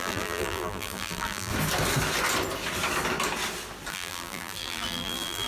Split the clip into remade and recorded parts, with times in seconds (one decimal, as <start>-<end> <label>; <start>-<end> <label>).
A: 0.0-1.5 remade; 1.5-3.9 recorded; 3.9-5.5 remade